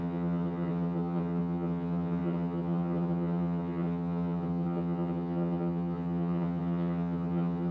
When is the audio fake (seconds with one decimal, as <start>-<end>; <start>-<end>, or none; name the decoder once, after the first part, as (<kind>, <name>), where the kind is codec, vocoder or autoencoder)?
0.0-7.7 (vocoder, HiFi-GAN)